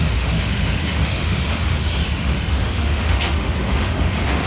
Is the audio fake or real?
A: fake